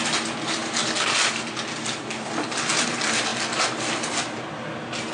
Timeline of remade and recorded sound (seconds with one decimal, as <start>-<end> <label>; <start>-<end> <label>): 0.0-5.1 recorded